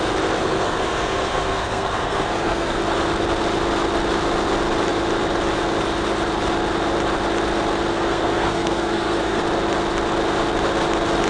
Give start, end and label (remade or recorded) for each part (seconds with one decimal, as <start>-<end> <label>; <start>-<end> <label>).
0.0-0.4 recorded; 0.4-2.8 remade; 2.8-7.9 recorded; 7.9-9.4 remade; 9.4-11.3 recorded